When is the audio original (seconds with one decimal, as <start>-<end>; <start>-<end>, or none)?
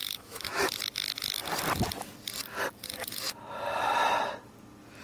0.7-5.0